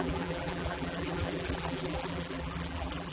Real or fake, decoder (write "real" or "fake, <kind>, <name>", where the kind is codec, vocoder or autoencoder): fake, vocoder, BigVGAN v2